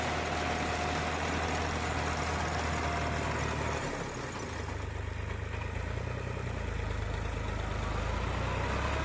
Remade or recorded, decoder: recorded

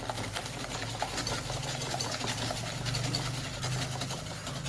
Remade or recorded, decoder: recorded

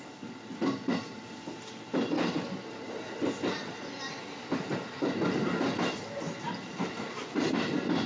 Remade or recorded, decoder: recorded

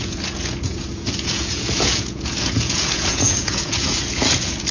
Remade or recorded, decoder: remade, vocoder, Vocos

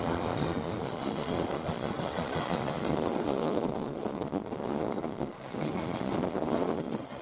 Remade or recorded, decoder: remade, vocoder, Vocos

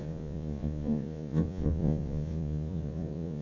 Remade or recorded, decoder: remade, vocoder, Vocos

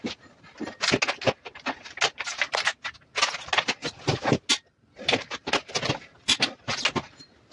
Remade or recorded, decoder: recorded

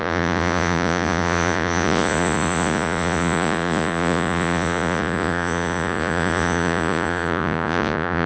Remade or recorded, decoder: remade, vocoder, Vocos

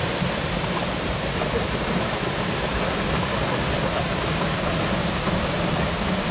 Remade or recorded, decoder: recorded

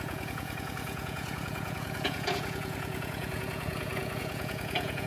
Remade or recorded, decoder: remade, vocoder, Vocos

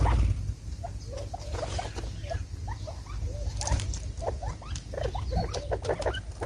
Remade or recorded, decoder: recorded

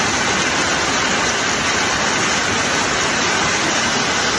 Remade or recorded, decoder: recorded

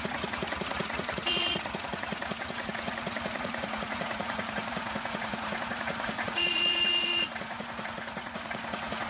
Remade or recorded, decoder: remade, vocoder, Vocos